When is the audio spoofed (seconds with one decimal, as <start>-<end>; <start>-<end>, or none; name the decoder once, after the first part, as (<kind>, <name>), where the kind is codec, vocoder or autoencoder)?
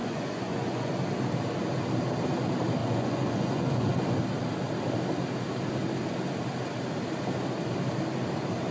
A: 0.0-0.9 (vocoder, Vocos); 2.8-3.9